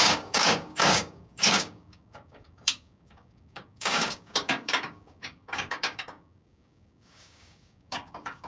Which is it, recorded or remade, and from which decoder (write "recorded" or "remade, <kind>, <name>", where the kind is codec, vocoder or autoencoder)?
remade, codec, DAC